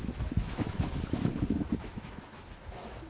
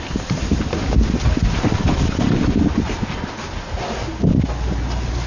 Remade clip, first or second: first